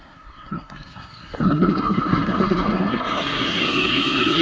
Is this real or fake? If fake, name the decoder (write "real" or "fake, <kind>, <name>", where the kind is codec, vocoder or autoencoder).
fake, codec, SNAC